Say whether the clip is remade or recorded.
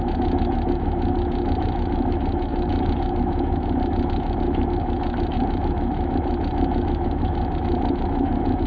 remade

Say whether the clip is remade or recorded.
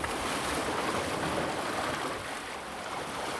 recorded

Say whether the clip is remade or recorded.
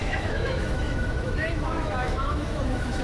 remade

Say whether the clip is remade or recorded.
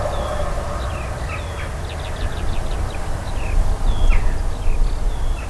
recorded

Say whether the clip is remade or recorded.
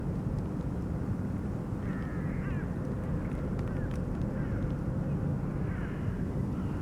recorded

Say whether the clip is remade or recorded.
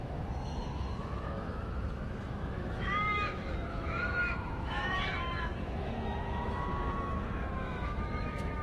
remade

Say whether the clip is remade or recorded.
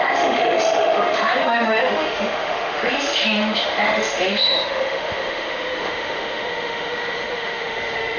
remade